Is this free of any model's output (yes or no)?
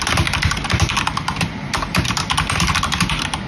yes